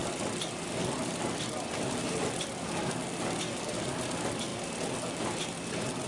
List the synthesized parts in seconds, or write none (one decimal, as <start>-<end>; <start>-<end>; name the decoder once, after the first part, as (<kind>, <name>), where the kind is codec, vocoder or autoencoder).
none